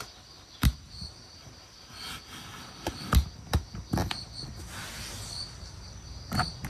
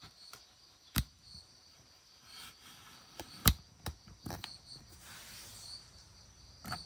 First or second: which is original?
first